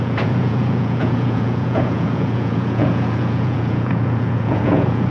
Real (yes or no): no